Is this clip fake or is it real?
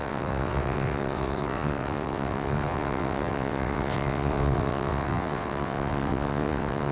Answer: fake